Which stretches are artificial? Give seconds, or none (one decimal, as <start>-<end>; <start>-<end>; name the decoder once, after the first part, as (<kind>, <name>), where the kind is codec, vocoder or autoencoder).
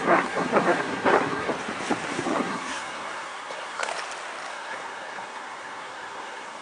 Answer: 0.0-1.5 (codec, SNAC); 2.1-3.9; 4.5-6.6